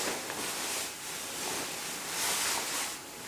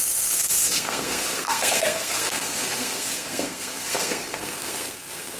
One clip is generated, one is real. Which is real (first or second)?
first